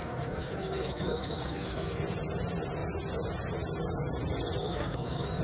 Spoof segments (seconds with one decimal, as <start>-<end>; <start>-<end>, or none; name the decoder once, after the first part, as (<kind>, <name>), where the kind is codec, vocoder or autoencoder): 0.0-2.0 (codec, SNAC); 4.6-5.4